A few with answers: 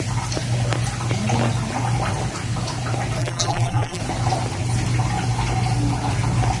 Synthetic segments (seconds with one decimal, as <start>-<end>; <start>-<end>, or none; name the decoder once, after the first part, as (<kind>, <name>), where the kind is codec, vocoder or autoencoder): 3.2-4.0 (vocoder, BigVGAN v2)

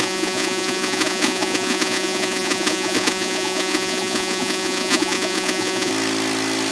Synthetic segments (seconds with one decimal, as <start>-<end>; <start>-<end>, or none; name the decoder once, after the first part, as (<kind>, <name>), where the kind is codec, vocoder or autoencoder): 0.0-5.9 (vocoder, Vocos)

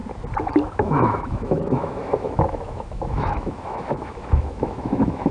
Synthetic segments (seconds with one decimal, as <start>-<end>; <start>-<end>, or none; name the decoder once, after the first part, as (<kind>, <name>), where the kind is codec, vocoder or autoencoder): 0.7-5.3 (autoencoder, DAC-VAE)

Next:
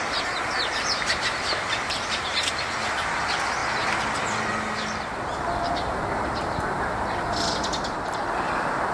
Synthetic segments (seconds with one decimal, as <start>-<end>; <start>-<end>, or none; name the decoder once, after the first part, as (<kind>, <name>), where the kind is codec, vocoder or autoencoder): 0.0-3.6 (vocoder, BigVGAN v2); 8.3-8.9

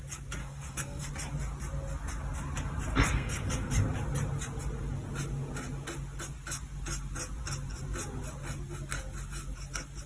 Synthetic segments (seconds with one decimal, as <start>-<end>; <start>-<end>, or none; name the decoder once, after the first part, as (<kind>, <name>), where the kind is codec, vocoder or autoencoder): 0.4-1.1 (codec, SNAC); 2.9-3.7